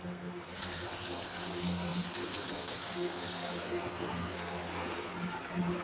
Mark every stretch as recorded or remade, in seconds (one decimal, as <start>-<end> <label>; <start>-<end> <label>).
0.0-5.1 remade; 5.1-5.8 recorded